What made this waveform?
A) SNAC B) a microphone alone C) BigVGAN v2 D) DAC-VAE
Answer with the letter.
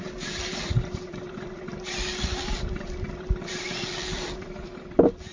C